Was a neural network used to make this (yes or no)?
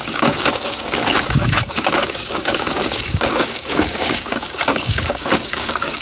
yes